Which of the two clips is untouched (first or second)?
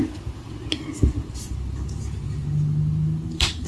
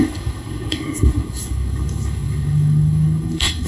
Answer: first